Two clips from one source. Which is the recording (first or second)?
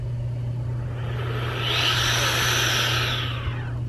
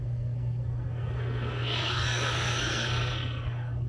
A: first